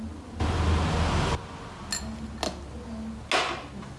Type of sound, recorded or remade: recorded